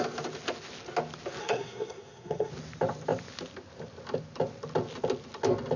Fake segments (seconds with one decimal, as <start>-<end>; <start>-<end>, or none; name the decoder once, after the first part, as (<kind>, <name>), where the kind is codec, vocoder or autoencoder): 1.4-2.5 (codec, SNAC)